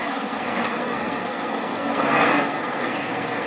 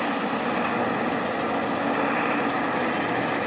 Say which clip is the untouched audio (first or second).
second